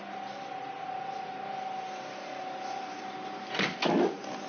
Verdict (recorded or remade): recorded